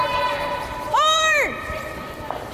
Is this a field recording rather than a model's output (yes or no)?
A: no